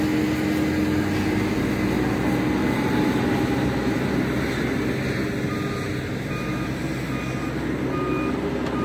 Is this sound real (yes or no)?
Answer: yes